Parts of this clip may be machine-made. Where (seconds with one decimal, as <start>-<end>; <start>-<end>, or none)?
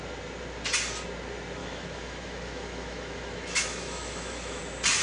1.6-4.6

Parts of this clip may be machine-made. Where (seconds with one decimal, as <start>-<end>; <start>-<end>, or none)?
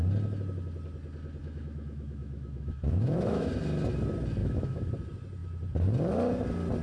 1.4-3.5; 4.4-4.9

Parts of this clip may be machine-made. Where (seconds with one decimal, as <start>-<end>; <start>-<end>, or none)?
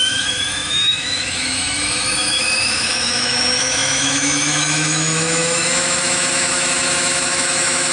0.0-7.9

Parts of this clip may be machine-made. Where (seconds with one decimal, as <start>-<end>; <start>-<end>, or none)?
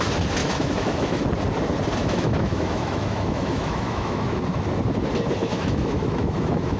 0.4-1.2; 2.0-4.4; 5.4-6.8